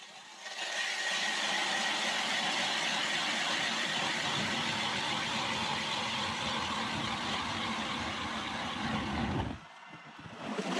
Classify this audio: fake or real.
real